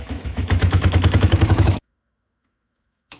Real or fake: fake